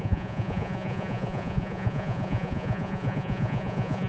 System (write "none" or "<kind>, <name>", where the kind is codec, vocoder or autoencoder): vocoder, Vocos